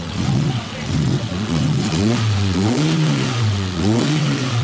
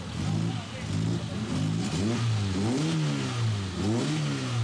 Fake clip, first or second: first